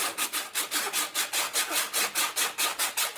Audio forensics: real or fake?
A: real